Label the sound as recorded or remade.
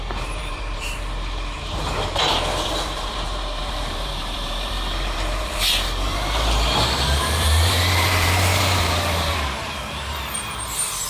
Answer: remade